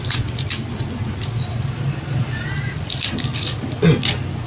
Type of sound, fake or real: real